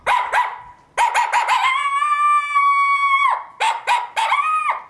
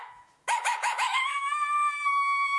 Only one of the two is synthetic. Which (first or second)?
second